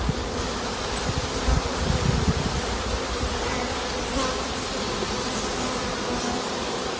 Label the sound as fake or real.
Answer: real